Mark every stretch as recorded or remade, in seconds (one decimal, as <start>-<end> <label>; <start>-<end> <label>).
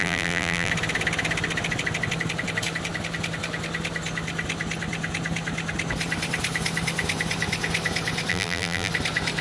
0.0-0.7 remade; 0.7-8.3 recorded; 8.3-8.9 remade; 8.9-9.4 recorded